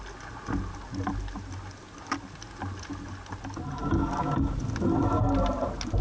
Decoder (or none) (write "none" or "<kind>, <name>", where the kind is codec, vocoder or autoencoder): none